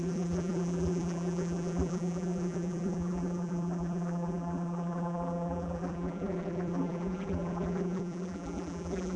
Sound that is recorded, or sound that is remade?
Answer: remade